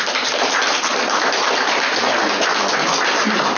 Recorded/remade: recorded